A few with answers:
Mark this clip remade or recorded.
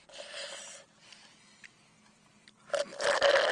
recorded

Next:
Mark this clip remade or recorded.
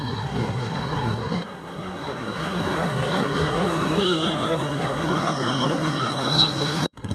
remade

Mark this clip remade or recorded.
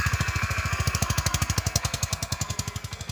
remade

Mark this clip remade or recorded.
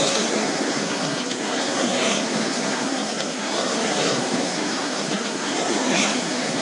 remade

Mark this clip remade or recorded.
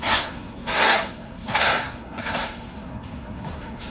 remade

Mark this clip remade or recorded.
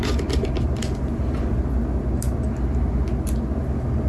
recorded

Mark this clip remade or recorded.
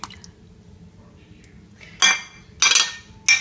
recorded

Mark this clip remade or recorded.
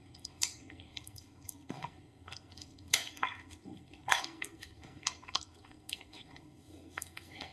remade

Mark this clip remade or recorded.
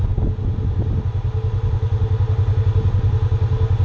recorded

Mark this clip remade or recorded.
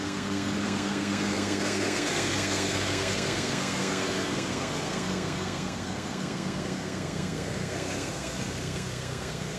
remade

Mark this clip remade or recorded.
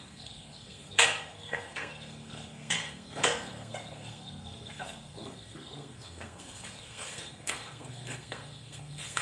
remade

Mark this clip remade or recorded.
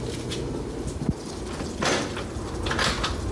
recorded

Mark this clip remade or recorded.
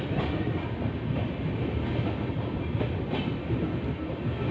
recorded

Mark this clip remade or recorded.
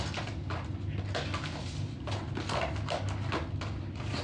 recorded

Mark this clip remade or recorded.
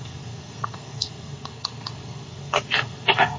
remade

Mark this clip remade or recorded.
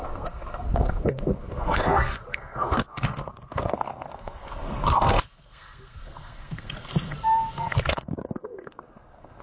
remade